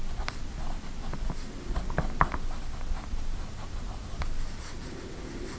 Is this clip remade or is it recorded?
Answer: recorded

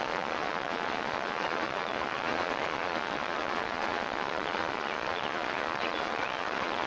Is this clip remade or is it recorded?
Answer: remade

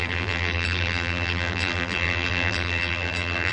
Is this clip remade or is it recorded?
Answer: remade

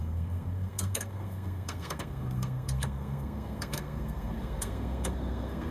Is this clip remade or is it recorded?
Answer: remade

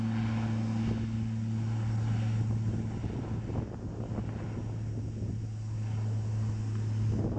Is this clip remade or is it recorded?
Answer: recorded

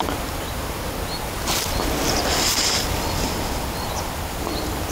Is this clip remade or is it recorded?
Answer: recorded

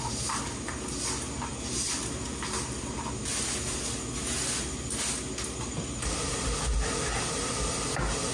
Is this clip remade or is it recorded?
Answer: recorded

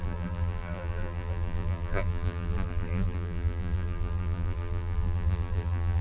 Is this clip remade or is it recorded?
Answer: remade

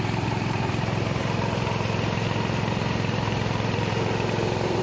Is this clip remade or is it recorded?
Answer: remade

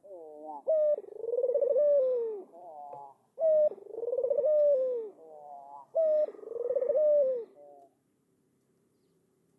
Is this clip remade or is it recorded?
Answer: recorded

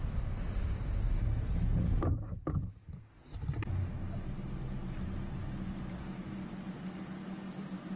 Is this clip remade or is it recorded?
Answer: recorded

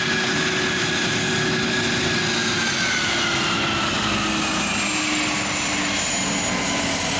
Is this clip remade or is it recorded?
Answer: recorded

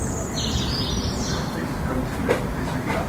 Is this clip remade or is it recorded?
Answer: recorded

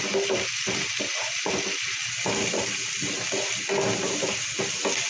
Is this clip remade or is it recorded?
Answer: recorded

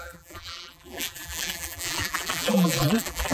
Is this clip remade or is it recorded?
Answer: remade